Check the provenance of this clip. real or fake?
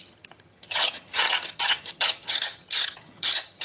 fake